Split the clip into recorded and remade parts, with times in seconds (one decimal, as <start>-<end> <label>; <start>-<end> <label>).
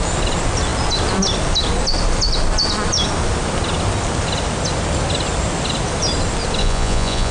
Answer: 0.0-6.6 recorded; 6.6-7.3 remade